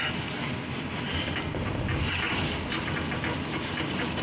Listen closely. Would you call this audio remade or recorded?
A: recorded